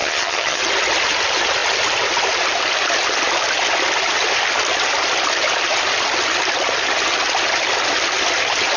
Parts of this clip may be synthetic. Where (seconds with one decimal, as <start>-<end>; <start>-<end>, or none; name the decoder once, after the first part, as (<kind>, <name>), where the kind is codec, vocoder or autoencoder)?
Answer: 0.0-0.6 (vocoder, HiFi-GAN)